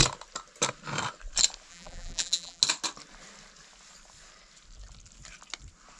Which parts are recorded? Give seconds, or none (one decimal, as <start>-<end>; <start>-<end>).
0.0-1.7; 2.6-6.0